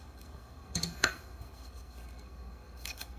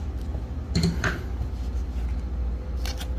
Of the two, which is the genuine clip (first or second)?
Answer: second